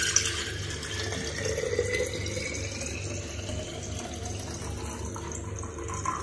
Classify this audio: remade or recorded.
recorded